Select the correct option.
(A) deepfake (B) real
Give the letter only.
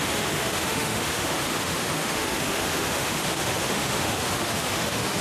A